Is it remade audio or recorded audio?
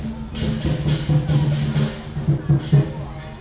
recorded